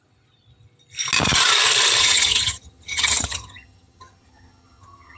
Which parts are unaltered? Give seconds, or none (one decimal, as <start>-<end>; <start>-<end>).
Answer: 0.0-2.0